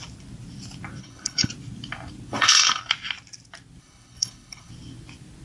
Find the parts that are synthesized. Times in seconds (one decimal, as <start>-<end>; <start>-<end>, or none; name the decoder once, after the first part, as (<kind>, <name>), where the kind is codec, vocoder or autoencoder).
1.0-1.5 (codec, HILCodec); 2.3-2.8; 3.8-4.7